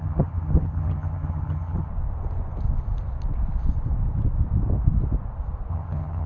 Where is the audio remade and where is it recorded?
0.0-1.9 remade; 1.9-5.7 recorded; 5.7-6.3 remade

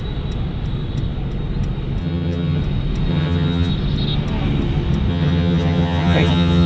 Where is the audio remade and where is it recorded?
0.0-2.0 recorded; 2.0-2.6 remade; 2.6-3.1 recorded; 3.1-3.7 remade; 3.7-5.1 recorded; 5.1-6.7 remade

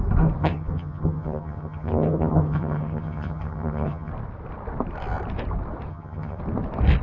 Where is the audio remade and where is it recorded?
0.0-0.4 recorded; 0.4-4.1 remade; 4.1-5.9 recorded; 5.9-6.4 remade; 6.4-7.0 recorded

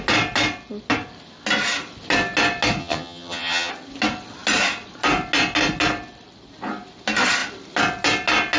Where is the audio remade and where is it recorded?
0.0-2.8 recorded; 2.8-3.7 remade; 3.7-8.6 recorded

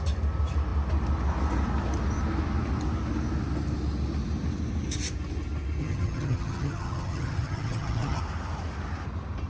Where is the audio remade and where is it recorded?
0.0-5.8 recorded; 5.8-8.2 remade; 8.2-9.5 recorded

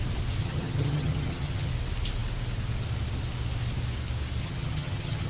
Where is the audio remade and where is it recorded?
0.0-0.4 recorded; 0.4-1.7 remade; 1.7-4.4 recorded; 4.4-5.3 remade